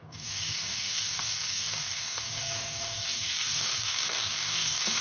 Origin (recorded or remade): remade